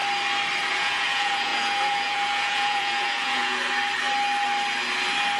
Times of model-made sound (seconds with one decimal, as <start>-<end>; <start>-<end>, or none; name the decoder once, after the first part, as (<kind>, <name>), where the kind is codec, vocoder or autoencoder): 0.6-3.6 (vocoder, Vocos)